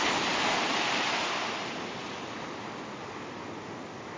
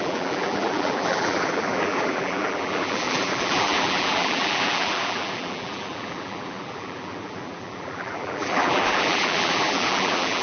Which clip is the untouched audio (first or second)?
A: first